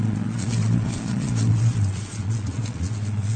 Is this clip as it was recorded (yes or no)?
no